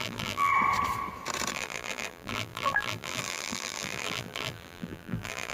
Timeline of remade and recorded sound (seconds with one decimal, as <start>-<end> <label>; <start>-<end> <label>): 0.0-0.5 remade; 0.5-1.5 recorded; 1.5-5.5 remade